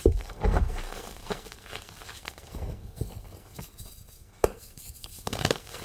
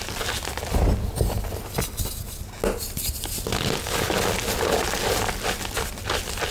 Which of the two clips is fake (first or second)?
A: first